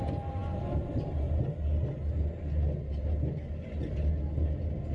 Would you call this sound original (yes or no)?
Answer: yes